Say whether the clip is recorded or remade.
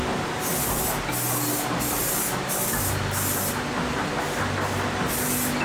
recorded